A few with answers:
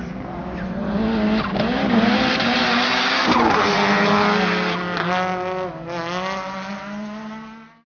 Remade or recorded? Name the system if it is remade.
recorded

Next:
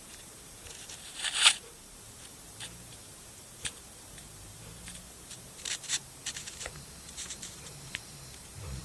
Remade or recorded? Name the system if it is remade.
remade, vocoder, BigVGAN v2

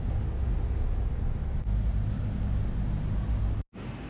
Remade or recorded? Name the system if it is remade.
recorded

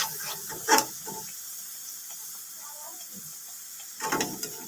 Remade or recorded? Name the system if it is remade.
recorded